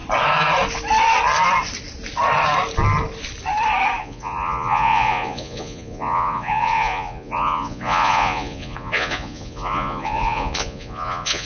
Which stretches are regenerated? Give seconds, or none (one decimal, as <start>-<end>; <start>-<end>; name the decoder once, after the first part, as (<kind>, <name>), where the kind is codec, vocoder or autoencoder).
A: 4.0-11.5 (vocoder, Vocos)

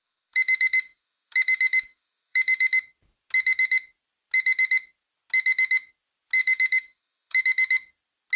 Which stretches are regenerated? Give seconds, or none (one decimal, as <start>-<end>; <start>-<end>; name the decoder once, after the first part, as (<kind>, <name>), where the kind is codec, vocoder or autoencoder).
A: 0.0-2.8 (autoencoder, DAC-VAE); 6.4-7.4

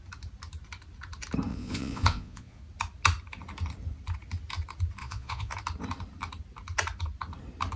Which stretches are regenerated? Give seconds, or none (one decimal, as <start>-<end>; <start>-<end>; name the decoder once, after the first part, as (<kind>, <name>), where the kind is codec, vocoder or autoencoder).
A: 1.5-2.6 (vocoder, Vocos); 5.0-5.5

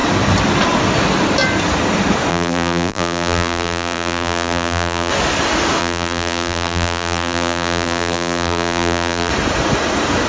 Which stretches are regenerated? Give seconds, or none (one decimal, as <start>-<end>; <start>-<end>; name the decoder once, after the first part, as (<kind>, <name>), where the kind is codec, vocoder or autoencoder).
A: 2.3-5.1 (vocoder, BigVGAN v2); 5.8-9.3